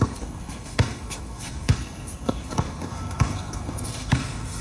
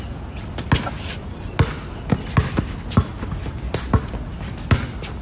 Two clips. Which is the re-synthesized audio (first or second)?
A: first